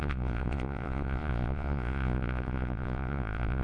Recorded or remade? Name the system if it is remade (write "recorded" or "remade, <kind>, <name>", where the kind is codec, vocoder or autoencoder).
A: remade, vocoder, Vocos